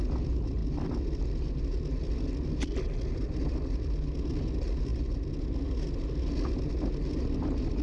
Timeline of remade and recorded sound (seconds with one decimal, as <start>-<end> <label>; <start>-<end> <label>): 0.0-7.8 recorded

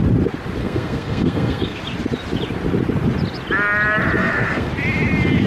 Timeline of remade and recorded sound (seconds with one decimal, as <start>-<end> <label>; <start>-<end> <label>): 0.0-0.6 recorded; 0.6-1.8 remade; 1.8-4.2 recorded; 4.2-4.7 remade; 4.7-5.5 recorded

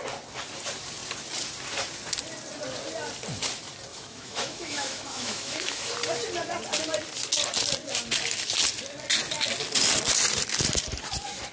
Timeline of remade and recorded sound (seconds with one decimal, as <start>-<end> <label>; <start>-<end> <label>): 0.0-3.9 recorded; 3.9-5.9 remade; 5.9-11.5 recorded

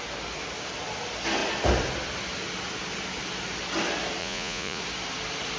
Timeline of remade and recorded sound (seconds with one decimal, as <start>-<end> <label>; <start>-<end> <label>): 0.0-4.2 recorded; 4.2-4.8 remade; 4.8-5.6 recorded

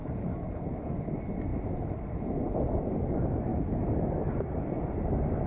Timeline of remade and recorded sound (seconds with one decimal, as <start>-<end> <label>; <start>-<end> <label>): 0.0-5.5 recorded